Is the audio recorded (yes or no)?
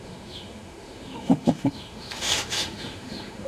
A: no